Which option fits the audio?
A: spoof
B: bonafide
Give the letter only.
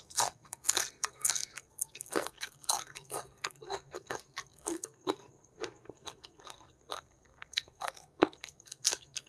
A